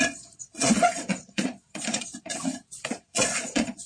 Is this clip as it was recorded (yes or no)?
no